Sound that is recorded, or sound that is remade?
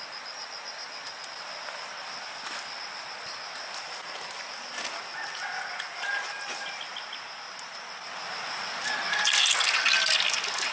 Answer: recorded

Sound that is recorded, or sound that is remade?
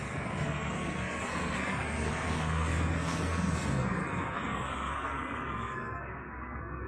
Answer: remade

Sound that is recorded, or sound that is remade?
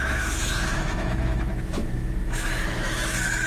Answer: remade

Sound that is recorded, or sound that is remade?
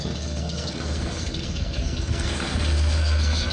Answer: remade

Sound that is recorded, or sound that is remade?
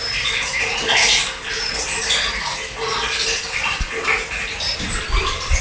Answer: recorded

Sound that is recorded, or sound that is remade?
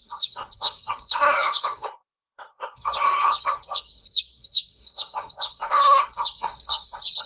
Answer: remade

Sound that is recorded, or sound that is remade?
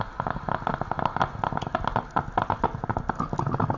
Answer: recorded